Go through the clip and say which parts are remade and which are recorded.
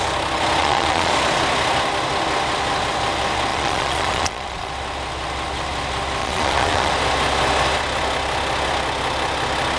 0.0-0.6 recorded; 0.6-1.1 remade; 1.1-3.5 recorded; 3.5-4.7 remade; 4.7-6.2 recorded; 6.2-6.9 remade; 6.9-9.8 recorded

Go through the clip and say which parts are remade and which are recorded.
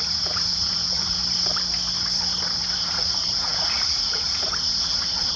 0.0-1.2 remade; 1.2-2.8 recorded; 2.8-5.4 remade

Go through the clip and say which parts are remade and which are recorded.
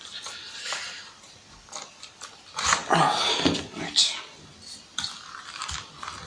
0.0-6.3 recorded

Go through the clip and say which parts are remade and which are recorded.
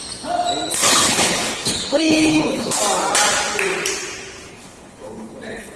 0.0-0.7 recorded; 0.7-2.8 remade; 2.8-4.5 recorded; 4.5-5.8 remade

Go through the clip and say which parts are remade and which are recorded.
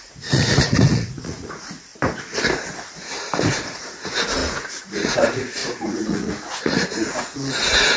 0.0-1.9 remade; 1.9-3.5 recorded; 3.5-8.0 remade